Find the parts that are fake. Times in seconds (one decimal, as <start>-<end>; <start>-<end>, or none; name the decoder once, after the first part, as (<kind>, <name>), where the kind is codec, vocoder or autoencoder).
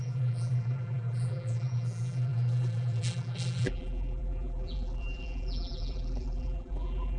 0.0-7.2 (vocoder, BigVGAN v2)